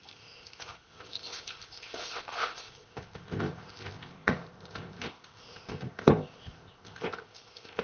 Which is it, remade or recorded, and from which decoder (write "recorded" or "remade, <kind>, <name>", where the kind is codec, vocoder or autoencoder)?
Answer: remade, codec, ZipCodec